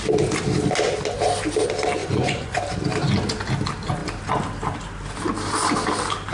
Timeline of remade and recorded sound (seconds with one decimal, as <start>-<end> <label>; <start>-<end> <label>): 0.0-2.0 recorded; 2.0-2.6 remade; 2.6-6.3 recorded